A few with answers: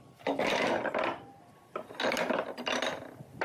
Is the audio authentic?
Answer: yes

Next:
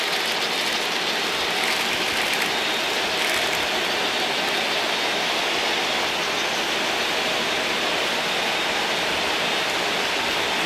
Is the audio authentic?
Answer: yes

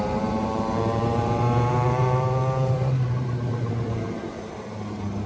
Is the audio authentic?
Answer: no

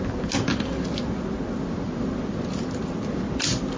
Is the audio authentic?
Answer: yes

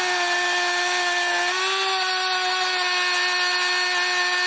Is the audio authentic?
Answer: yes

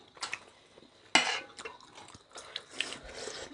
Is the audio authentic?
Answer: yes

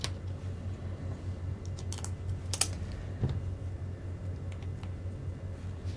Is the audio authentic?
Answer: yes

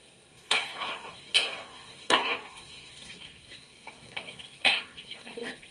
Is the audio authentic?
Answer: no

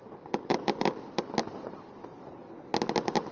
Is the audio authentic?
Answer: yes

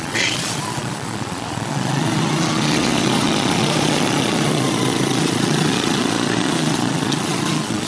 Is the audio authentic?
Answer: no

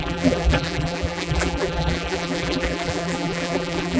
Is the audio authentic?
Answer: no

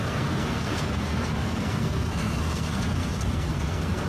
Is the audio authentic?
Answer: no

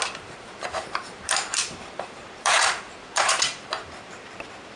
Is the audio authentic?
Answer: no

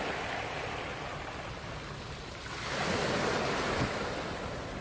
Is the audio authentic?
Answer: yes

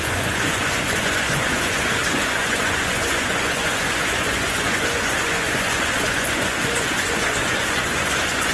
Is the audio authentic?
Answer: no